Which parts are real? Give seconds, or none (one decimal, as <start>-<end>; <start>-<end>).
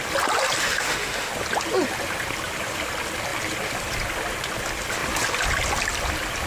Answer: 0.0-0.6; 1.3-6.5